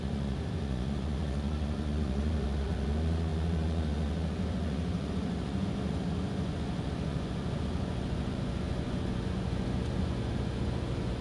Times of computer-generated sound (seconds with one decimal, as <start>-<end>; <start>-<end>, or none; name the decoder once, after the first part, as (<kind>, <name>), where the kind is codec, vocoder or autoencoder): 0.0-11.2 (vocoder, Vocos)